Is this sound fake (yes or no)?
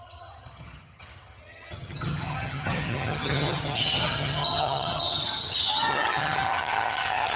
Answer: yes